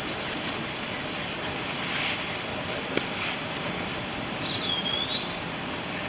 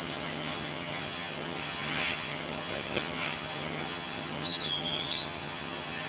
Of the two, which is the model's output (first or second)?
second